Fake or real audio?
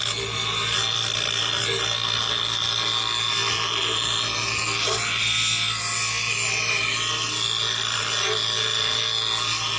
real